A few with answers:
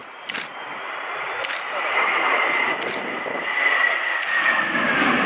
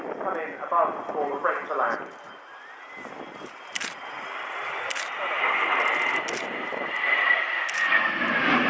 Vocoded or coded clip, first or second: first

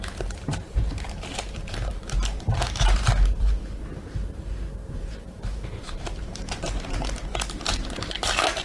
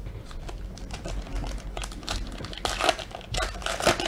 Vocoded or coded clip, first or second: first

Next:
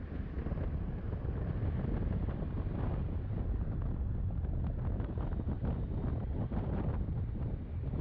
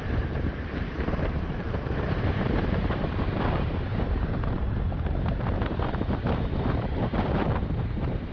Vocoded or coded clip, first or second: second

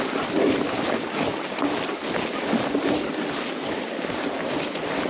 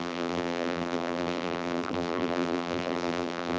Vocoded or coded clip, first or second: second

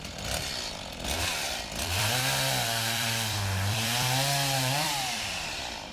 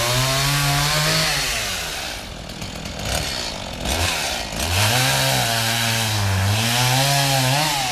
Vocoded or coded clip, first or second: first